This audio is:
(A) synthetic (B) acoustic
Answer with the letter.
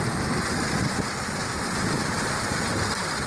B